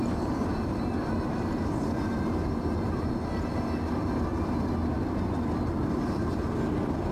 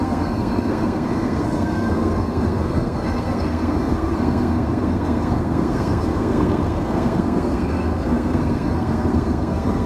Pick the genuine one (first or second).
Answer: first